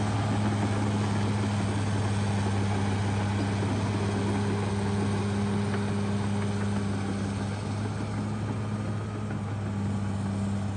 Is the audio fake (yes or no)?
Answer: no